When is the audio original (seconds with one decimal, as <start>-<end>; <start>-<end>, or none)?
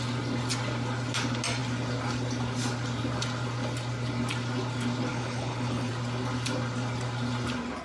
0.0-5.1; 5.9-7.8